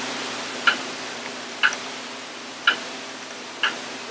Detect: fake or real real